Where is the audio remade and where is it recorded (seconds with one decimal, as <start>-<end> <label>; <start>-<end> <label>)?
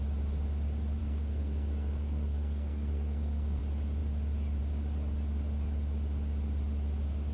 0.0-1.0 recorded; 1.0-3.6 remade; 3.6-7.3 recorded